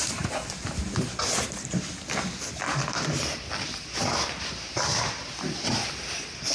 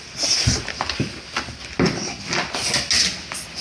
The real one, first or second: second